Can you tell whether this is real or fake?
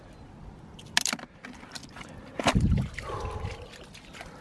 real